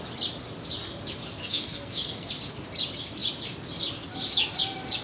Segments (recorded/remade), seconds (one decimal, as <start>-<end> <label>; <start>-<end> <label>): 0.0-1.4 recorded; 1.4-2.3 remade; 2.3-5.0 recorded